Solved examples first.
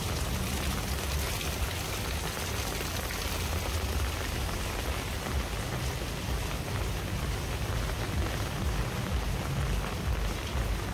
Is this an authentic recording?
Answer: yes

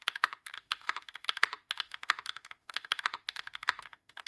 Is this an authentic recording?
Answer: no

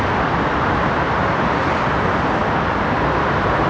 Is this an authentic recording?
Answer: yes